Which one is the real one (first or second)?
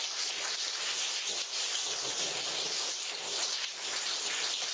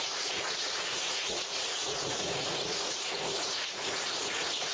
first